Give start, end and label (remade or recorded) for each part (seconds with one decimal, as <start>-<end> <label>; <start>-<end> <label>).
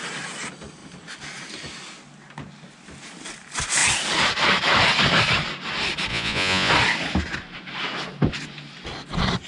0.0-6.1 recorded; 6.1-6.7 remade; 6.7-9.5 recorded